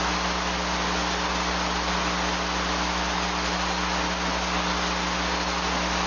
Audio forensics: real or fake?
real